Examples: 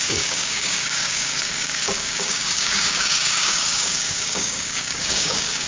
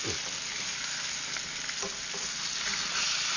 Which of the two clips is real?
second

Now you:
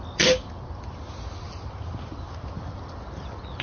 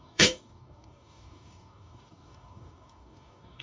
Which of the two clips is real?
first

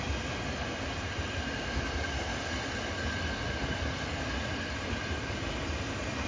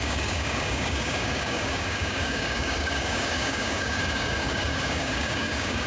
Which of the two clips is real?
first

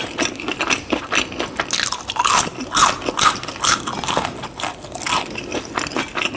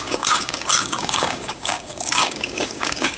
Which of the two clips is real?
first